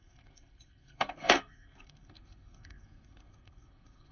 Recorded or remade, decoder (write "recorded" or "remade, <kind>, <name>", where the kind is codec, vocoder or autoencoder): remade, codec, SNAC